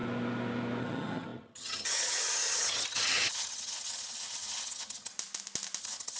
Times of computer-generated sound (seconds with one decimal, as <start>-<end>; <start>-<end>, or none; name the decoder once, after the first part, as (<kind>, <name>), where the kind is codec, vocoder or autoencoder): 0.8-5.1 (vocoder, HiFi-GAN); 5.8-6.2